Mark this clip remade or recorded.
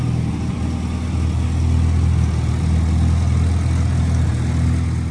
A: recorded